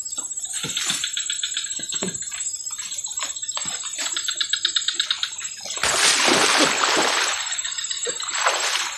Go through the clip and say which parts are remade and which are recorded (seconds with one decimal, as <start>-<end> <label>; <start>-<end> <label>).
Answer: 0.0-9.0 recorded